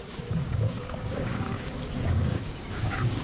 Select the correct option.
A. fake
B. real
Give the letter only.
A